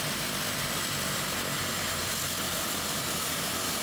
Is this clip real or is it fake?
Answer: real